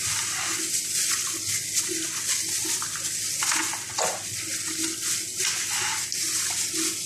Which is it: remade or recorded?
recorded